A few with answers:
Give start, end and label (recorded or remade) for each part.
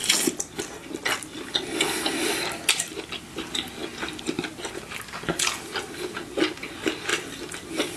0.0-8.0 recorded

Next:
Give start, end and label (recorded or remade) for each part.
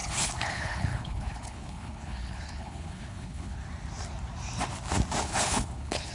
0.0-3.6 remade; 3.6-5.2 recorded; 5.2-6.1 remade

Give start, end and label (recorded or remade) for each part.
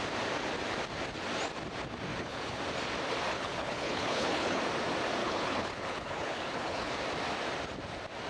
0.0-2.1 recorded; 2.1-2.6 remade; 2.6-3.3 recorded; 3.3-4.6 remade; 4.6-5.2 recorded; 5.2-6.9 remade; 6.9-8.3 recorded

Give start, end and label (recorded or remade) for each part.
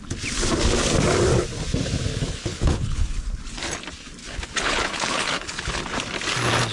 0.0-2.1 recorded; 2.1-3.2 remade; 3.2-4.2 recorded; 4.2-5.8 remade; 5.8-6.7 recorded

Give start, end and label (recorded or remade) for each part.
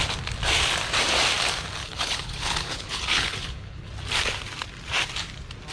0.0-1.8 recorded; 1.8-3.9 remade; 3.9-5.7 recorded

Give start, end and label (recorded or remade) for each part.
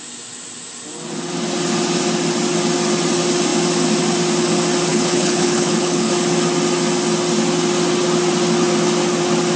0.0-4.9 recorded; 4.9-6.1 remade; 6.1-9.6 recorded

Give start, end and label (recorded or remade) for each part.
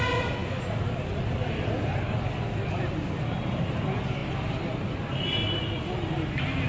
0.0-6.7 recorded